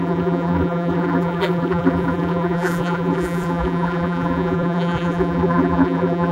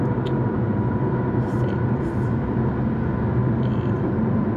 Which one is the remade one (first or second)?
first